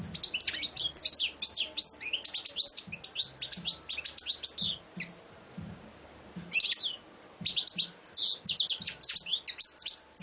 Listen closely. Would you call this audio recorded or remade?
recorded